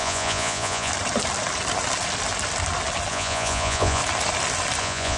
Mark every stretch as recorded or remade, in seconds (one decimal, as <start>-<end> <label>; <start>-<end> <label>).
0.0-0.9 remade; 0.9-3.1 recorded; 3.1-4.0 remade; 4.0-4.8 recorded; 4.8-5.2 remade